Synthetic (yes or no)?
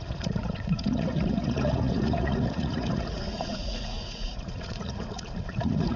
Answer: yes